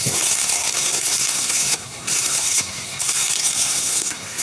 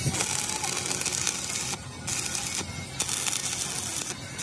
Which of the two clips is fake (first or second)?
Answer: first